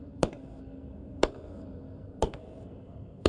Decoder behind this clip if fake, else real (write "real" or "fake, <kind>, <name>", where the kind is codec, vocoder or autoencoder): fake, codec, SNAC